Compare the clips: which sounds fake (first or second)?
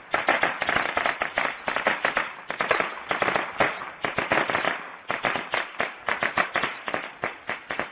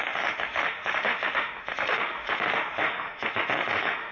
second